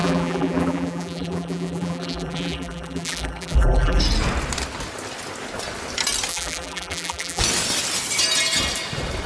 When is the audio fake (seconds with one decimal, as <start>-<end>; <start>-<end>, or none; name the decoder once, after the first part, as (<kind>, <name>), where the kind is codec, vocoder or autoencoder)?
0.0-4.0 (vocoder, BigVGAN v2); 6.3-7.4